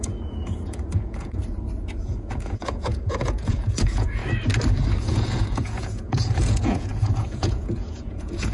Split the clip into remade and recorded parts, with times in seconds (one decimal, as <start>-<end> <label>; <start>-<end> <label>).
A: 0.0-1.4 remade; 1.4-2.0 recorded; 2.0-4.2 remade; 4.2-5.0 recorded; 5.0-8.5 remade